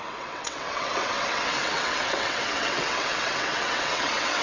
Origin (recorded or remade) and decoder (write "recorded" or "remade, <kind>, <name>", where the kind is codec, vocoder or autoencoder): remade, vocoder, WaveNeXt